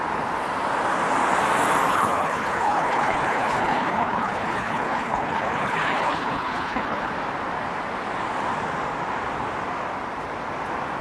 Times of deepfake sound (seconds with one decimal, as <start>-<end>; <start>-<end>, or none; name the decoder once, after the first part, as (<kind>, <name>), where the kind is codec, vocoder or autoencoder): 1.9-7.1 (codec, HILCodec)